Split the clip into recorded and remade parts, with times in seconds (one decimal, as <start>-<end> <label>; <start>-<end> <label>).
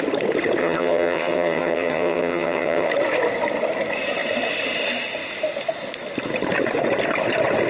0.0-0.6 recorded; 0.6-2.9 remade; 2.9-7.7 recorded